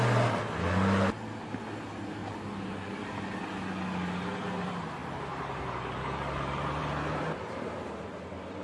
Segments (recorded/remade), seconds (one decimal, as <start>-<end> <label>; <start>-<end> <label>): 0.0-2.2 recorded; 2.2-3.0 remade; 3.0-5.0 recorded; 5.0-5.6 remade; 5.6-6.8 recorded; 6.8-8.1 remade; 8.1-8.6 recorded

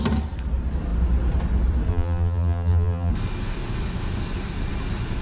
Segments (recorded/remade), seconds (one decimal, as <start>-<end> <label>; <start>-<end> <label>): 0.0-1.9 recorded; 1.9-3.1 remade; 3.1-5.2 recorded

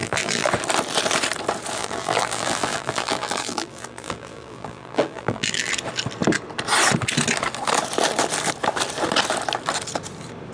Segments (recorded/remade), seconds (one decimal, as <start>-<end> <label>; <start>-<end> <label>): 0.0-0.5 remade; 0.5-1.8 recorded; 1.8-5.7 remade; 5.7-10.5 recorded

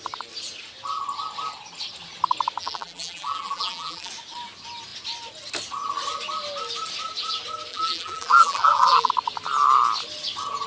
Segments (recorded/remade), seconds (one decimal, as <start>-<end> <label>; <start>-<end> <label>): 0.0-2.6 recorded; 2.6-4.1 remade; 4.1-7.7 recorded; 7.7-9.1 remade; 9.1-10.7 recorded

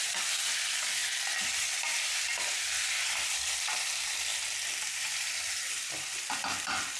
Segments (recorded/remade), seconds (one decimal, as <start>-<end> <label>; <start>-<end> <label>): 0.0-1.0 remade; 1.0-1.6 recorded; 1.6-4.3 remade; 4.3-4.9 recorded; 4.9-7.0 remade

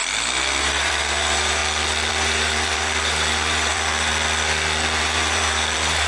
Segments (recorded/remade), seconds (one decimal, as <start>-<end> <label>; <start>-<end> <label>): 0.0-0.6 recorded; 0.6-1.6 remade; 1.6-2.1 recorded; 2.1-4.1 remade; 4.1-5.0 recorded; 5.0-6.1 remade

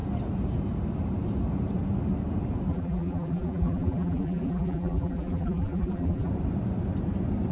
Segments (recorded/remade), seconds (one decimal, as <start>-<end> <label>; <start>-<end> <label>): 0.0-2.7 recorded; 2.7-6.3 remade; 6.3-7.5 recorded